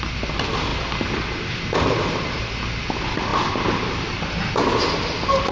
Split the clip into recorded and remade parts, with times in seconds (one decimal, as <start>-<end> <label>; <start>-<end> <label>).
0.0-5.5 recorded